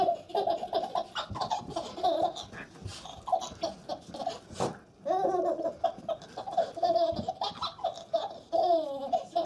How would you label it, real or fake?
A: real